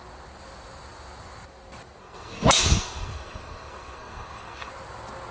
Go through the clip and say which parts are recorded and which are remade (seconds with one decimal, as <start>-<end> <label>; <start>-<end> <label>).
0.0-2.0 recorded; 2.0-4.7 remade; 4.7-5.3 recorded